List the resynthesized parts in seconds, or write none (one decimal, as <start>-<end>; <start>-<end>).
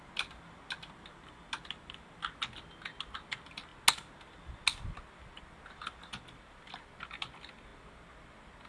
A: none